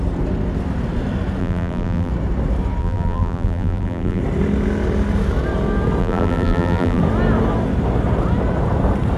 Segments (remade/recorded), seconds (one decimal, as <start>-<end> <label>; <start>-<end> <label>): 0.0-1.4 recorded; 1.4-2.1 remade; 2.1-2.8 recorded; 2.8-4.2 remade; 4.2-6.0 recorded; 6.0-7.0 remade; 7.0-9.2 recorded